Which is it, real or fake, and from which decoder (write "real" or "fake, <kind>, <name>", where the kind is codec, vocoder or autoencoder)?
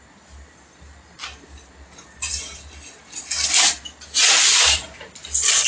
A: real